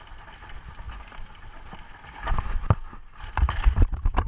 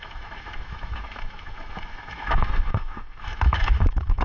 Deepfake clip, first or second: second